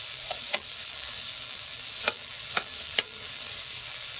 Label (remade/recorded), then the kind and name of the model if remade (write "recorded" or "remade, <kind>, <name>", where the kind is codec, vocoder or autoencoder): remade, vocoder, WaveNeXt